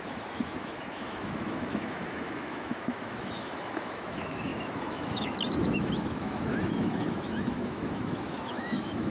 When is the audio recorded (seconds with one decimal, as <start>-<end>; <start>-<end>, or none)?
none